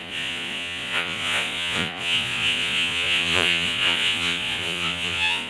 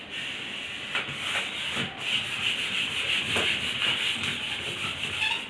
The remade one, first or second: first